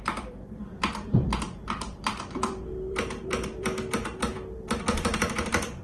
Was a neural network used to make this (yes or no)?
yes